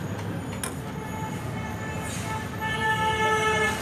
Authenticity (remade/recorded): recorded